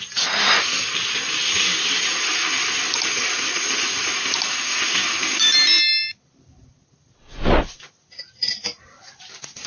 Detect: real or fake fake